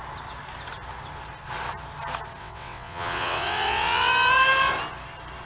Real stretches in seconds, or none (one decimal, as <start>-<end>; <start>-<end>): 0.0-2.4; 4.1-5.5